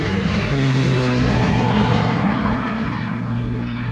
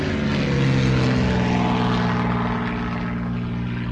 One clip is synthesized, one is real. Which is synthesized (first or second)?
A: first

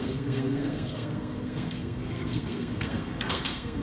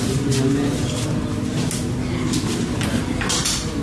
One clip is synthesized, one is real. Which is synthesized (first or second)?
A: first